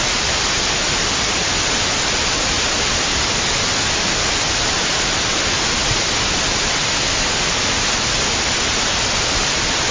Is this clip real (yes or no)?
yes